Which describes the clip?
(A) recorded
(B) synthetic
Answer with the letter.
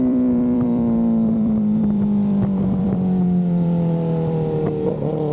B